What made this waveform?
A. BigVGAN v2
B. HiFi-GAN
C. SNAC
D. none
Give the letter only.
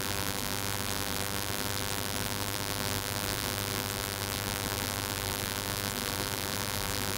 A